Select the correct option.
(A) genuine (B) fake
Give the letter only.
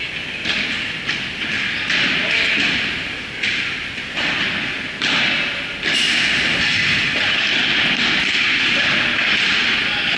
A